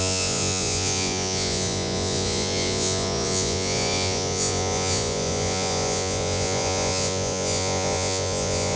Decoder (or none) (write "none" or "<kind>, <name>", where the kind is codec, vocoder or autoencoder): vocoder, Vocos